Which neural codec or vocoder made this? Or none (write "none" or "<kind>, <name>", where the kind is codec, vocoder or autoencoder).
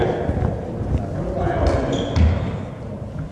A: none